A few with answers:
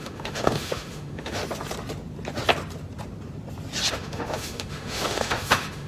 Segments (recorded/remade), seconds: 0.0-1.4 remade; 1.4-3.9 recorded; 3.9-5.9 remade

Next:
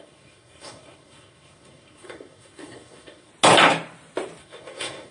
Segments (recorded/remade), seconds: 0.0-3.3 remade; 3.3-4.4 recorded; 4.4-5.1 remade

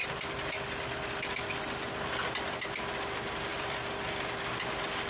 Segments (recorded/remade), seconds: 0.0-3.5 recorded; 3.5-4.4 remade; 4.4-5.1 recorded

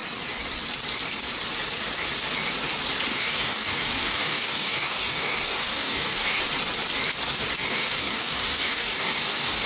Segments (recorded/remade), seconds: 0.0-3.1 recorded; 3.1-6.4 remade; 6.4-7.7 recorded; 7.7-9.7 remade